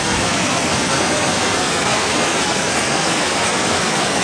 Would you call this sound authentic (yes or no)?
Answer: no